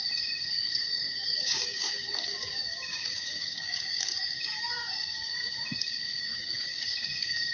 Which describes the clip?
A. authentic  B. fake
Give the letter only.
B